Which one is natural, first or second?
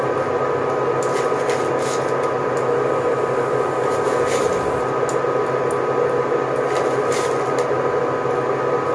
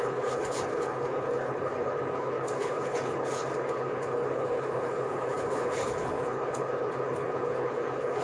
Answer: first